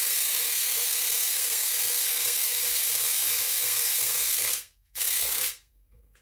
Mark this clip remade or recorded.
remade